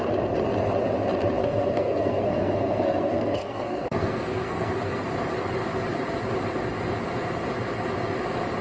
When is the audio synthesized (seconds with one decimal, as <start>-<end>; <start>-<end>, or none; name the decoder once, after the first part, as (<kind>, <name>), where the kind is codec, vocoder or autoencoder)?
1.4-5.1 (codec, SNAC)